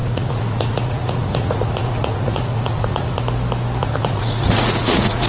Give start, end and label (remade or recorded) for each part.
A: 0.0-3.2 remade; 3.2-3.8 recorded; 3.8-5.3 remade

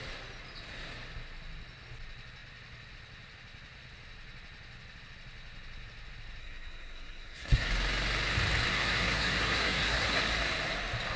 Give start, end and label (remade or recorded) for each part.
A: 0.0-6.4 recorded; 6.4-7.7 remade; 7.7-8.7 recorded; 8.7-10.2 remade; 10.2-11.2 recorded

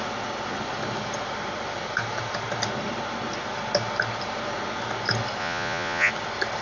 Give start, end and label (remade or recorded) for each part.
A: 0.0-5.4 recorded; 5.4-6.1 remade; 6.1-6.6 recorded

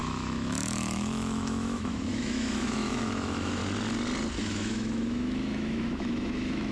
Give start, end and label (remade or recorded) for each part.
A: 0.0-3.6 remade; 3.6-4.4 recorded; 4.4-6.7 remade

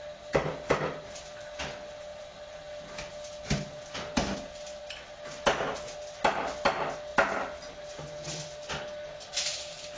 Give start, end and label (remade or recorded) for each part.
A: 0.0-2.1 recorded; 2.1-3.1 remade; 3.1-10.0 recorded